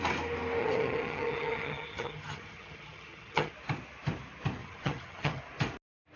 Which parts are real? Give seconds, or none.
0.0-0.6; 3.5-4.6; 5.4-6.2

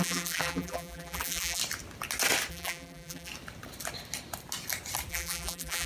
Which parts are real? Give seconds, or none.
1.6-2.5; 3.3-5.1

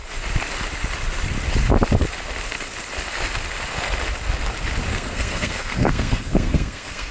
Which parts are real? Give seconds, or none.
0.0-4.9

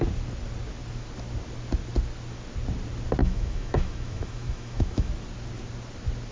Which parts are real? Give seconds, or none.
0.0-3.2; 5.1-6.3

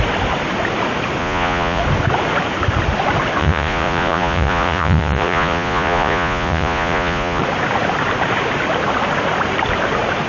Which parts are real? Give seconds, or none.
0.0-1.2; 1.8-3.4; 7.4-10.3

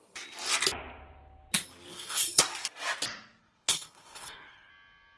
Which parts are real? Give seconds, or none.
0.0-1.9; 2.4-3.4; 4.7-5.2

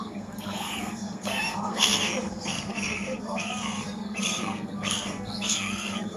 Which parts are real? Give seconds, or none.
none